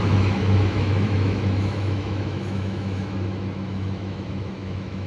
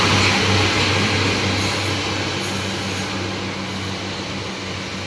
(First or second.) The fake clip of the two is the first